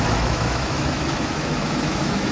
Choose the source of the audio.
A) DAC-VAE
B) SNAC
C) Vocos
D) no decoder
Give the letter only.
A